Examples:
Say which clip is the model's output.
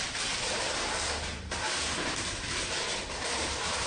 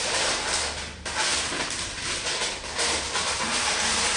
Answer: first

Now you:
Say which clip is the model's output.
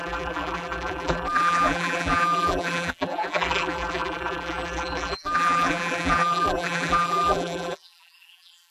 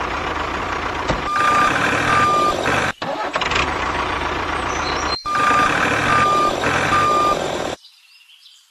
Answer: first